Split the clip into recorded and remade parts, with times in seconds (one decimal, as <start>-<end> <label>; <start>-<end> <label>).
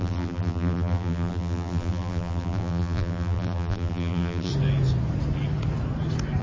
0.0-4.5 remade; 4.5-6.4 recorded